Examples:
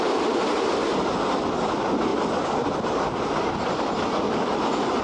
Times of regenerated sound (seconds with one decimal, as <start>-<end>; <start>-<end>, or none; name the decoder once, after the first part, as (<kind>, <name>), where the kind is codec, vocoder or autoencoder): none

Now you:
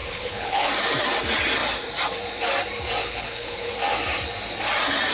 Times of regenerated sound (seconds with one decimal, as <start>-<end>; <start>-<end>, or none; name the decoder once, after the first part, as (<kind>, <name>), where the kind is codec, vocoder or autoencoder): 0.0-0.7 (codec, HILCodec); 3.0-3.7

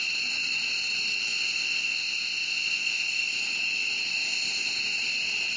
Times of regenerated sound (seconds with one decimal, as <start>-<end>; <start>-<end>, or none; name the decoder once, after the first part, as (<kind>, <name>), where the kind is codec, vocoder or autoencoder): 1.4-3.4 (codec, ZipCodec); 4.2-4.8

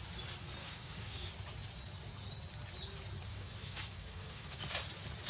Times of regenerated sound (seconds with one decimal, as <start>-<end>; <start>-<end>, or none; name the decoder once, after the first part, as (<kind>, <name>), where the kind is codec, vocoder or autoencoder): 0.6-1.3 (codec, DAC); 3.3-4.6

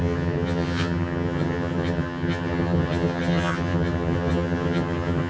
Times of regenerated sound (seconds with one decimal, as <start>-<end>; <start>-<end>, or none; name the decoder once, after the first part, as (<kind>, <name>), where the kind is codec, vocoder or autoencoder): 0.0-5.3 (vocoder, HiFi-GAN)

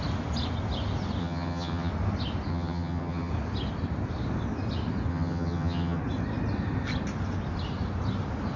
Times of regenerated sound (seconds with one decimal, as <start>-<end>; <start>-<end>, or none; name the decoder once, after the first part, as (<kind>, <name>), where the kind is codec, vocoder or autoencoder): 1.2-1.9 (vocoder, HiFi-GAN); 2.5-3.3; 5.1-6.0

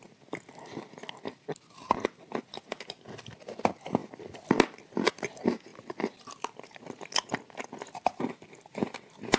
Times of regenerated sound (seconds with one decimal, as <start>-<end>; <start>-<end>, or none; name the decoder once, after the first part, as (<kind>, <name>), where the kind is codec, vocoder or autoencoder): none

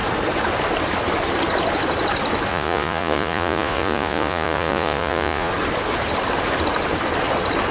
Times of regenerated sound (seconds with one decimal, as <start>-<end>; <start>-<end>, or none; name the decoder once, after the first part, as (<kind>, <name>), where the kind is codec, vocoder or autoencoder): 2.5-5.5 (vocoder, Vocos)